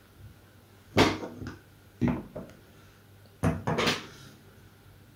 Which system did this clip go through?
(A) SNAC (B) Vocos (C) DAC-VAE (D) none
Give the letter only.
D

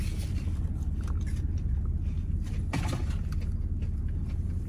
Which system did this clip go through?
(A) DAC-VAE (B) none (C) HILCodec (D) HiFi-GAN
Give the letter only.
B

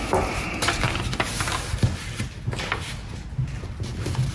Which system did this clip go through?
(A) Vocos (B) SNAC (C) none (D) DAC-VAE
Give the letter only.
C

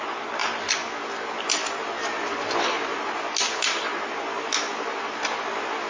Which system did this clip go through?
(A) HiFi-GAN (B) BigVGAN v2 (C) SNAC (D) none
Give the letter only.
D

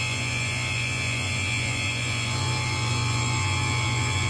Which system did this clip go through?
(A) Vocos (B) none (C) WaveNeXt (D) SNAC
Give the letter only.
A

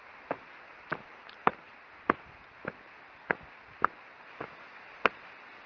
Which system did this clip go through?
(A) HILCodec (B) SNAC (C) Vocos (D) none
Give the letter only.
D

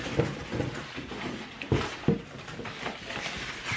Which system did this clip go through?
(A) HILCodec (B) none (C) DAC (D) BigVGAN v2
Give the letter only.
B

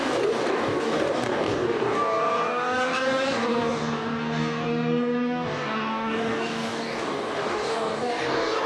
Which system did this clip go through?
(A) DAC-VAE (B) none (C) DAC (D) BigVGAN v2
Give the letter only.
C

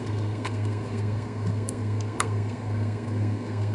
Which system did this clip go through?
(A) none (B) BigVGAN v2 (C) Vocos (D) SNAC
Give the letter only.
D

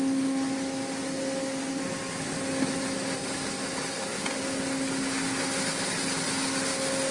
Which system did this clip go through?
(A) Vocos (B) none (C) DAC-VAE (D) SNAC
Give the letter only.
B